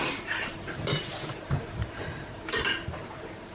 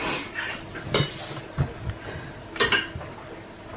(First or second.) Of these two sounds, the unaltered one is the second